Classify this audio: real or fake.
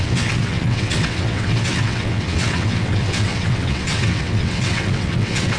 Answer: fake